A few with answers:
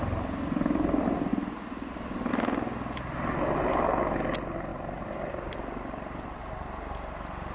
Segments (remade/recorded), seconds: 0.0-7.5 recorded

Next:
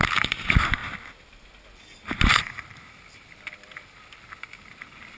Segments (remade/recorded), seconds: 0.0-5.2 recorded

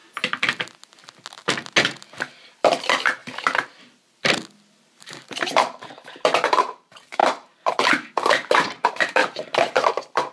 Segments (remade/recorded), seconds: 0.0-2.8 recorded; 2.8-3.2 remade; 3.2-4.8 recorded; 4.8-10.3 remade